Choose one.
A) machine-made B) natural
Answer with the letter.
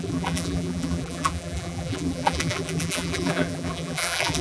A